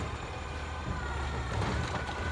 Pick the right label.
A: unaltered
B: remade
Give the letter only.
B